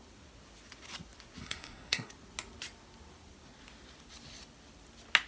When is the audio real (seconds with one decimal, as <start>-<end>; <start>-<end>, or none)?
0.0-1.4; 2.1-5.3